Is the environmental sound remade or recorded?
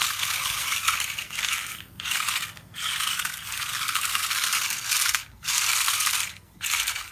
remade